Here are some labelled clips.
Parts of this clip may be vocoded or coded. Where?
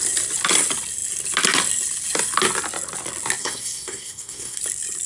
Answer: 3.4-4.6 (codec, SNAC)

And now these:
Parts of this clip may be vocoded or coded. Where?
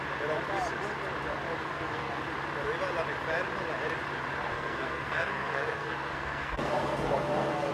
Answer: 1.6-2.2 (codec, SNAC); 4.5-7.7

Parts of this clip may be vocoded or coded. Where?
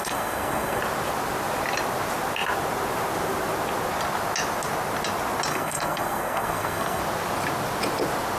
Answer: 0.0-0.8 (codec, SNAC); 5.5-7.0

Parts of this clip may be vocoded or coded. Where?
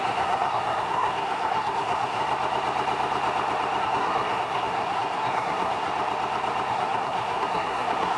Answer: 0.0-2.2 (codec, SNAC); 3.8-5.9; 6.7-8.2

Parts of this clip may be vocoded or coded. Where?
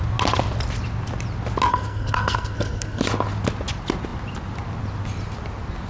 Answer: 1.7-3.0 (codec, SNAC)